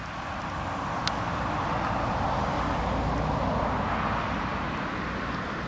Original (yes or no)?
yes